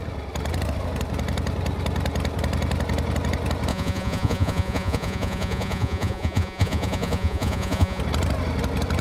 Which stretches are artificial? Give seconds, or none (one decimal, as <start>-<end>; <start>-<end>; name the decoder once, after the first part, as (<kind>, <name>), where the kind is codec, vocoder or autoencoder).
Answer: 3.7-8.0 (vocoder, Vocos)